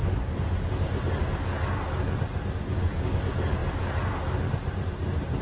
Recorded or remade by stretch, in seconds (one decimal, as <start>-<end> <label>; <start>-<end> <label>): 0.0-2.7 recorded; 2.7-3.2 remade; 3.2-5.4 recorded